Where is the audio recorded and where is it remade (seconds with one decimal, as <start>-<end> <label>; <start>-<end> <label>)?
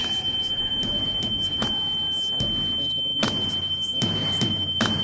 0.0-1.7 remade; 1.7-3.1 recorded; 3.1-5.0 remade